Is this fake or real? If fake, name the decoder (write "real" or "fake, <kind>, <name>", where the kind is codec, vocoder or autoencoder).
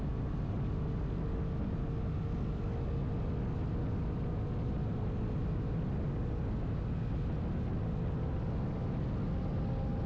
real